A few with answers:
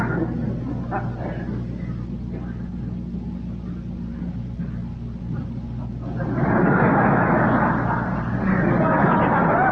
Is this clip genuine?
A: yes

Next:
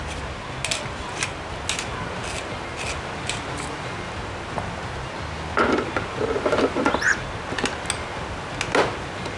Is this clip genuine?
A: yes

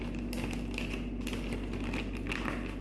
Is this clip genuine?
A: yes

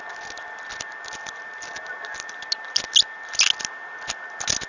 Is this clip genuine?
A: yes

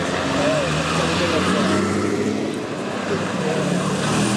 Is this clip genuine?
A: yes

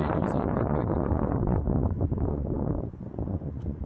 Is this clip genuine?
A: no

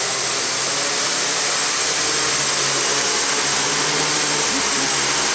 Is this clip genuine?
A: yes